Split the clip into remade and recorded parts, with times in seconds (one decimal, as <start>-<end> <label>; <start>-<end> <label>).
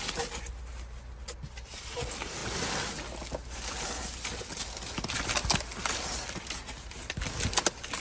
0.0-8.0 recorded